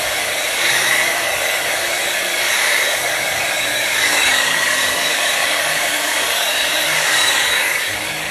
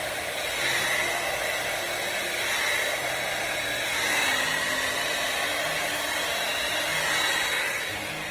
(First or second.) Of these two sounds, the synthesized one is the first